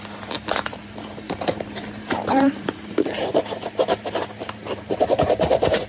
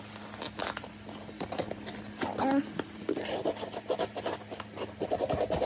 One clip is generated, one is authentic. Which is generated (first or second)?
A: first